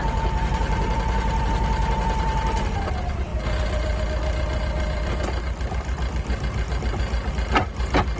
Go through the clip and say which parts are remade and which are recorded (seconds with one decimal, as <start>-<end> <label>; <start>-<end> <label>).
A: 0.0-8.2 recorded